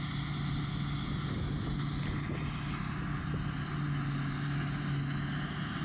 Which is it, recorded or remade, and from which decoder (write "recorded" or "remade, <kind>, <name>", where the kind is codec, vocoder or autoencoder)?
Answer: recorded